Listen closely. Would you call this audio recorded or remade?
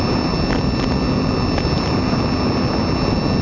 recorded